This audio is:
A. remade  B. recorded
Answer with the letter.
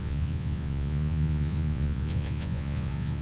A